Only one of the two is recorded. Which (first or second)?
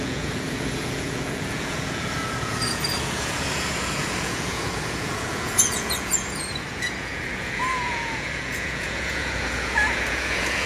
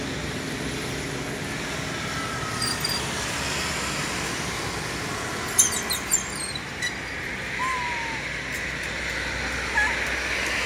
second